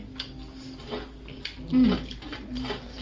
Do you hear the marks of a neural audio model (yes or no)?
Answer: no